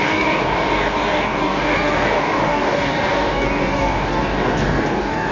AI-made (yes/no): yes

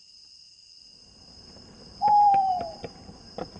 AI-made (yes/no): yes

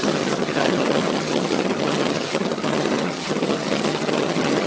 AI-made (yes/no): yes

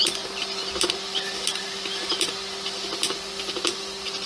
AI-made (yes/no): no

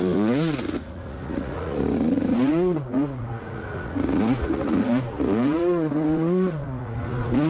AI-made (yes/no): yes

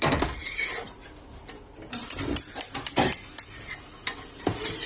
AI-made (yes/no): no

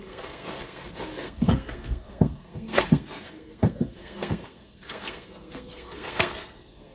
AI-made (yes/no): yes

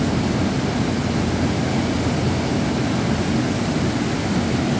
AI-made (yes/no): no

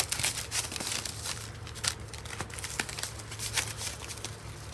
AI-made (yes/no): no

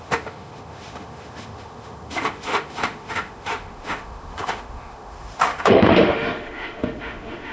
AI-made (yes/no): yes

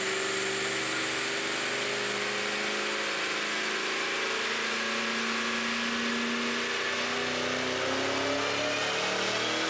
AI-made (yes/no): no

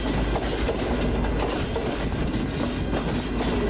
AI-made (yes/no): no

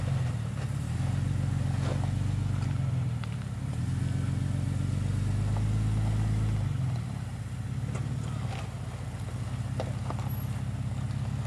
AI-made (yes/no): no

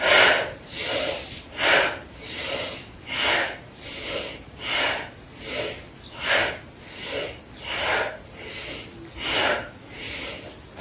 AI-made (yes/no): no